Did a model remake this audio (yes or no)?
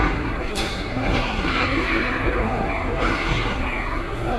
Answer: yes